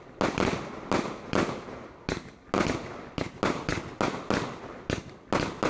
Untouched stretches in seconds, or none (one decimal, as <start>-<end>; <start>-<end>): 0.0-5.7